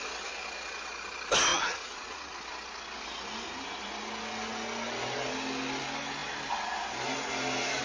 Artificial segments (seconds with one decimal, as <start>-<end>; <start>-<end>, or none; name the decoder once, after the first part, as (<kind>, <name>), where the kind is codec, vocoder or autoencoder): 1.5-2.3 (vocoder, Vocos)